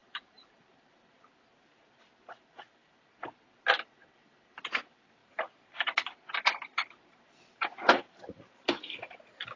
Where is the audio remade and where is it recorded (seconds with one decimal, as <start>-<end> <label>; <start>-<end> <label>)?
0.0-0.6 remade; 0.6-2.8 recorded; 2.8-3.6 remade; 3.6-5.2 recorded; 5.2-6.1 remade; 6.1-9.6 recorded